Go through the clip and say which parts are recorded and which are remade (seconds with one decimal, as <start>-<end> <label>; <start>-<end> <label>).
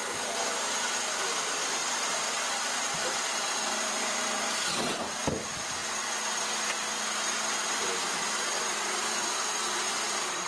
0.0-1.1 recorded; 1.1-5.8 remade; 5.8-8.6 recorded; 8.6-10.5 remade